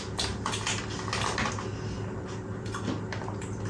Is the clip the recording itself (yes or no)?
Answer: yes